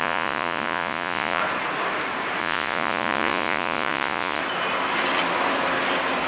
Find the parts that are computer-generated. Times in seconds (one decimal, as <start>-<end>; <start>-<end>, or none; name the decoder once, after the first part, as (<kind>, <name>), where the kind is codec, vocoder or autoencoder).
0.0-1.4 (vocoder, Vocos); 2.4-4.4